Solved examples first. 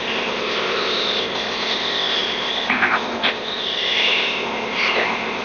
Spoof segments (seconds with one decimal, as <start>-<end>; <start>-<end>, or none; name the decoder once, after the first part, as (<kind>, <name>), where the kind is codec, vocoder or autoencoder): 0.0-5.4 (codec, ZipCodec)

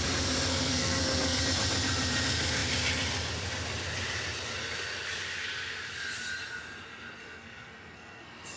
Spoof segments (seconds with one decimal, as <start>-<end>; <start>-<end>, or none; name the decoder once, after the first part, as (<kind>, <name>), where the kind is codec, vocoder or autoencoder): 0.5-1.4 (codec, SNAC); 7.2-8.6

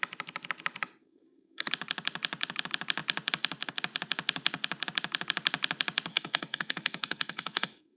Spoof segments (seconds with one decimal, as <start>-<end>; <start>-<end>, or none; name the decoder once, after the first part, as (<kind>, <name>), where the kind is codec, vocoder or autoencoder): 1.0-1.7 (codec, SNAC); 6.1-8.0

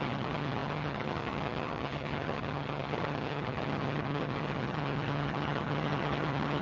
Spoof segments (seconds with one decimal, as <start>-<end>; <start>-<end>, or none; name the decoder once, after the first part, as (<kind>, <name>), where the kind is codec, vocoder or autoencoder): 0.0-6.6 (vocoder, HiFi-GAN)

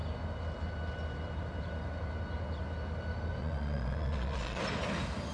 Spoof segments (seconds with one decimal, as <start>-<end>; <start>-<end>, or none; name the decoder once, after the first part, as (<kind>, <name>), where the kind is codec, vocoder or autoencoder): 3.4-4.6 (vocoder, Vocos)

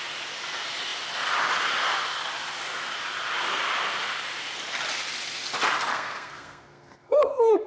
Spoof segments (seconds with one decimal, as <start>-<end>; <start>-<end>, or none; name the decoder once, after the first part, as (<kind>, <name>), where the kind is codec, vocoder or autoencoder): 5.9-7.7 (codec, SNAC)

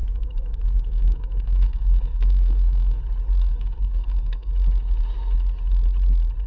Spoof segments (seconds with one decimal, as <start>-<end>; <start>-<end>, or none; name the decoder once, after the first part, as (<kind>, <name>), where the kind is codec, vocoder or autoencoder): 0.0-3.0 (codec, SNAC); 3.5-4.5

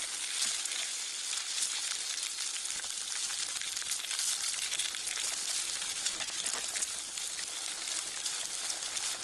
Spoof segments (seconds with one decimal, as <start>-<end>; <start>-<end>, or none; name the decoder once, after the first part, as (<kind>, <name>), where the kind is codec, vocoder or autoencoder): none